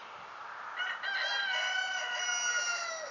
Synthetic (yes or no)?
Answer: no